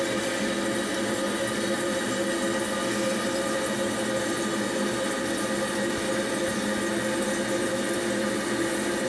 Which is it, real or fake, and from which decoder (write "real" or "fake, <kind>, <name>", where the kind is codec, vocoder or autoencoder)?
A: real